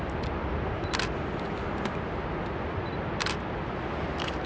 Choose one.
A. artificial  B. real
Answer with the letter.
B